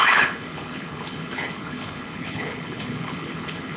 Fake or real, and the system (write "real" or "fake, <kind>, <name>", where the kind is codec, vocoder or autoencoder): fake, codec, HILCodec